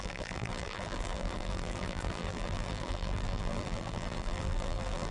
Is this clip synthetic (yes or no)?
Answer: yes